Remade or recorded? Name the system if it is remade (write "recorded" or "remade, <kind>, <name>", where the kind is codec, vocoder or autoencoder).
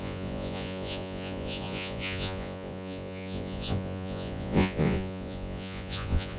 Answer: remade, vocoder, Vocos